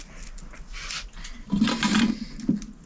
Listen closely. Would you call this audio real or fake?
real